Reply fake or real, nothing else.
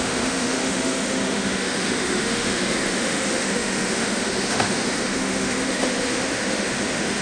fake